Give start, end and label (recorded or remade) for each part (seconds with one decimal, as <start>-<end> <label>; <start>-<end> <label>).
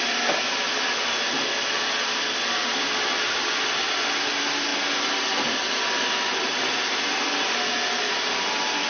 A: 0.0-8.9 recorded